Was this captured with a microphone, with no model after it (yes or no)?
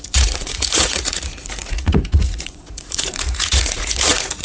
no